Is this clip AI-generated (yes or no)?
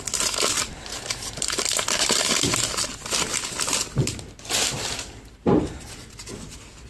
no